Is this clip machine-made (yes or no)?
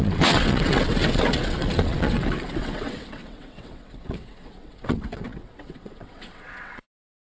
yes